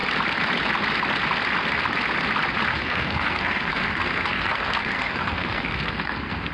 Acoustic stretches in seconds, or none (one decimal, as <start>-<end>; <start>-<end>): 0.0-2.7